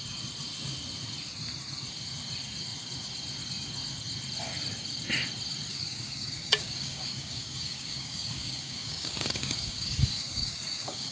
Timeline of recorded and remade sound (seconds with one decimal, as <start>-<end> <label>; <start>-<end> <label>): 0.0-5.7 recorded; 5.7-11.1 remade

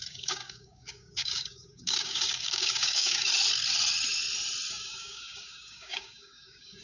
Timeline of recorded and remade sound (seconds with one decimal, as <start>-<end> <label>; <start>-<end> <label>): 0.0-3.3 remade; 3.3-4.7 recorded; 4.7-6.8 remade

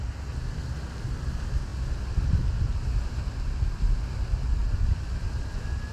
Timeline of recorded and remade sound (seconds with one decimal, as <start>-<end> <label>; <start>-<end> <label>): 0.0-5.9 recorded

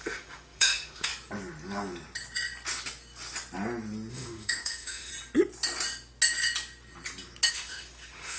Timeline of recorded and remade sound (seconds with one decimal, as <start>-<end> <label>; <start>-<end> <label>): 0.0-1.1 remade; 1.1-4.1 recorded; 4.1-5.1 remade; 5.1-7.5 recorded; 7.5-8.4 remade

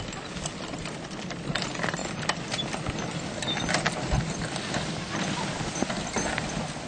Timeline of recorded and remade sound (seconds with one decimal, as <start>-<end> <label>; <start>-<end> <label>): 0.0-6.9 recorded